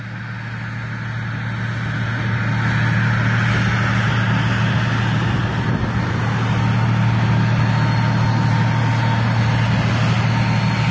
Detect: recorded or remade recorded